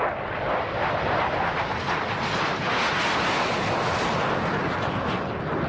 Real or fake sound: real